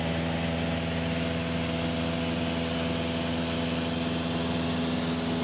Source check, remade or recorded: recorded